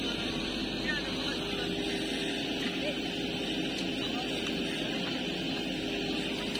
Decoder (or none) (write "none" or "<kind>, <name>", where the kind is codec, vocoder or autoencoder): none